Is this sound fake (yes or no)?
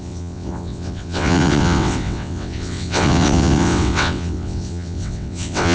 yes